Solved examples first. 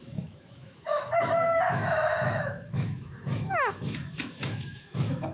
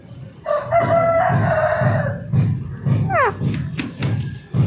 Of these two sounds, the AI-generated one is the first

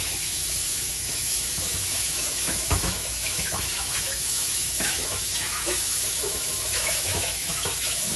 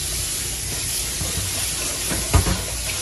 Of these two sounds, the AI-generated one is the first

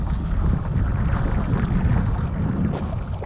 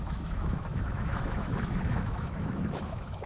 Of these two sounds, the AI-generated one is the second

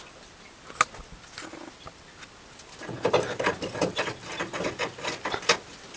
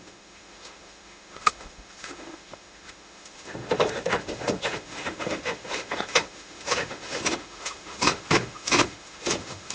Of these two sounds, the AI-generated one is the second